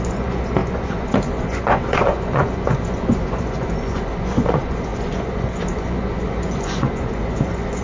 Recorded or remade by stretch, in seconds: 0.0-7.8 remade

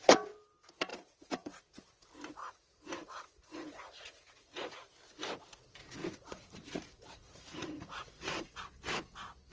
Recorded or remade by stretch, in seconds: 0.0-0.9 recorded; 0.9-1.6 remade; 1.6-2.4 recorded; 2.4-4.8 remade; 4.8-6.0 recorded; 6.0-8.6 remade; 8.6-9.5 recorded

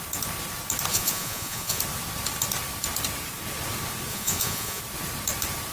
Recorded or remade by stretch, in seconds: 0.0-0.9 recorded; 0.9-1.8 remade; 1.8-4.1 recorded; 4.1-4.8 remade; 4.8-5.7 recorded

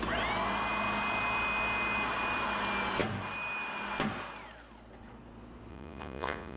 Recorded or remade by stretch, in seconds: 0.0-5.7 recorded; 5.7-6.6 remade

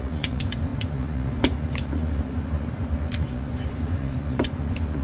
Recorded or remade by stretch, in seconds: 0.0-5.0 remade

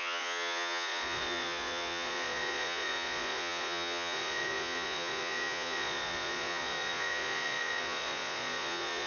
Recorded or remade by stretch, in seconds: 0.0-9.1 remade